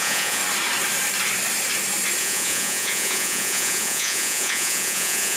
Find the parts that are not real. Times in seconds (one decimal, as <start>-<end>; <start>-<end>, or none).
0.0-0.4; 2.2-5.4